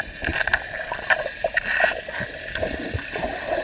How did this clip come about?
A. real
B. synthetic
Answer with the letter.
A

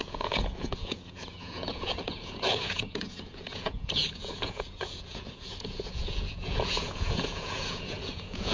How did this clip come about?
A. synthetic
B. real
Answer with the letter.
A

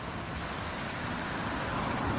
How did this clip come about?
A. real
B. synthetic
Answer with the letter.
A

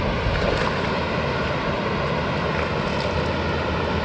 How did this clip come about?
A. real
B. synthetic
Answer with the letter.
A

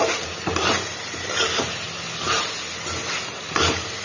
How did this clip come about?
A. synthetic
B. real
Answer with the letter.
B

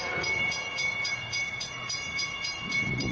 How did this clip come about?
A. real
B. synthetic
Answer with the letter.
B